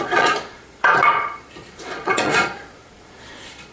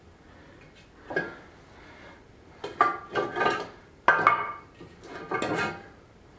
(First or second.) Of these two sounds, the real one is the second